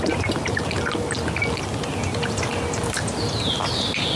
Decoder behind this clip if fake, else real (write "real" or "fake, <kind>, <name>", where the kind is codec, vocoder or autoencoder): real